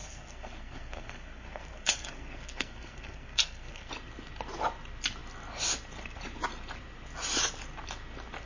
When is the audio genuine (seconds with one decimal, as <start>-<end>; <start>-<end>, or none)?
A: 3.9-8.5